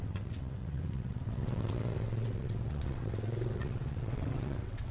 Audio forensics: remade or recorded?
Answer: remade